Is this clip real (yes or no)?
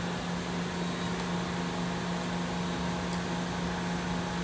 yes